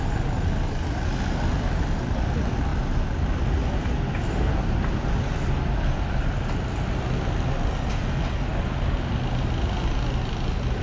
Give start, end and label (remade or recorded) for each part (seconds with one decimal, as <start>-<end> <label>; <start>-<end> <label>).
0.0-10.8 recorded